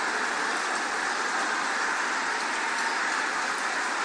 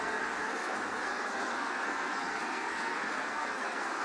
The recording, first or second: first